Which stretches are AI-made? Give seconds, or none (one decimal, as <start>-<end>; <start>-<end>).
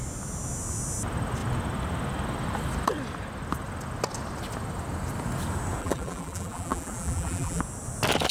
5.8-7.6